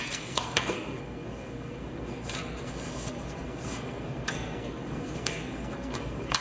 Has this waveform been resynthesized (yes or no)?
yes